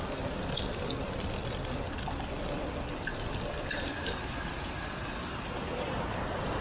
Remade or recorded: recorded